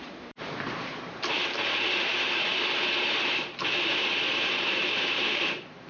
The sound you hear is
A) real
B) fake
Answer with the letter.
B